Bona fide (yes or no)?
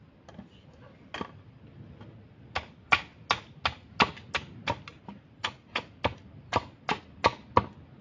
yes